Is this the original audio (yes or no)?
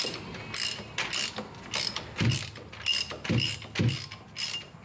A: yes